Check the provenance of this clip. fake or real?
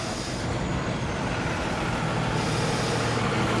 real